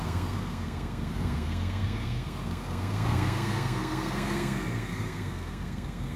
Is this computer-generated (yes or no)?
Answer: yes